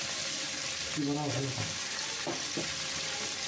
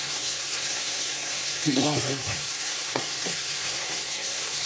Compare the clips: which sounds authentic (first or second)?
first